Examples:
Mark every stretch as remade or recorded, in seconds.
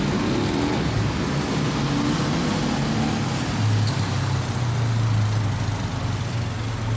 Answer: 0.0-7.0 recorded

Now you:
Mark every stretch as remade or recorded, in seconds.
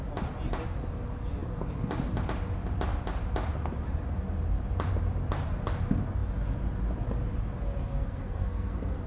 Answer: 0.0-7.8 recorded; 7.8-9.1 remade